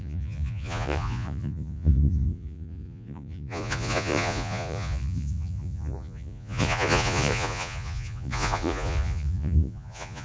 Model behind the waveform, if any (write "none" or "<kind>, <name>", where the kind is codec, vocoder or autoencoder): vocoder, Vocos